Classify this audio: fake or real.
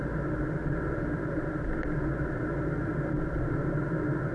real